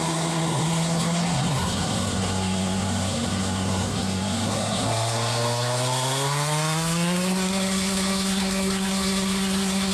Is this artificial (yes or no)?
yes